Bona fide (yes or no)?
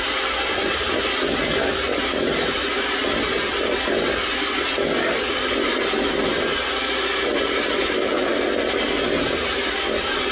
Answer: yes